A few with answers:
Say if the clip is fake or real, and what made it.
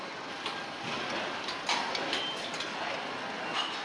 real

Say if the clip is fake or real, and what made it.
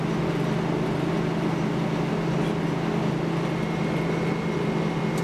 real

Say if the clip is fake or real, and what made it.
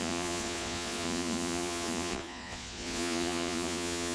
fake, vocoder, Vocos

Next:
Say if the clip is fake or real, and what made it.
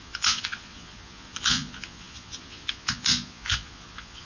fake, vocoder, Vocos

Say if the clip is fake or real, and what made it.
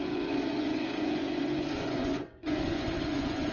fake, vocoder, Vocos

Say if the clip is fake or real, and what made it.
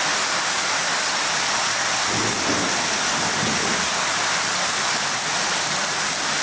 real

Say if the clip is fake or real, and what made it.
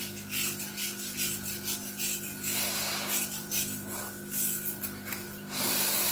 real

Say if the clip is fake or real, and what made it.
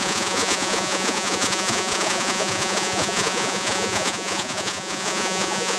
fake, vocoder, Vocos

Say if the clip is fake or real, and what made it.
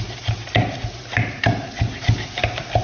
real